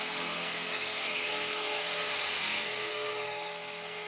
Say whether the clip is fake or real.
fake